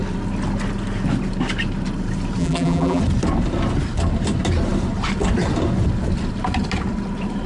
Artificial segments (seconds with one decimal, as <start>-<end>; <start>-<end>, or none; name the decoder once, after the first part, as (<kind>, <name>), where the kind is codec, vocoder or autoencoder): 2.4-3.0 (vocoder, BigVGAN v2)